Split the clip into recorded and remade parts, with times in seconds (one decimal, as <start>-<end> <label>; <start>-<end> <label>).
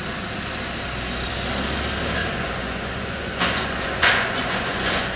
0.0-2.2 recorded; 2.2-5.2 remade